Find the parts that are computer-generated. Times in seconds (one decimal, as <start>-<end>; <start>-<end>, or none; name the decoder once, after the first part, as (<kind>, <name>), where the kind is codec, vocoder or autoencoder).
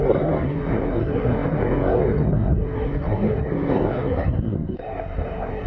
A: 0.0-5.7 (codec, SNAC)